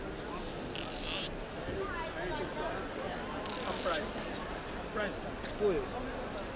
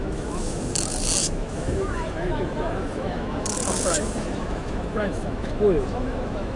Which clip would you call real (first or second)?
first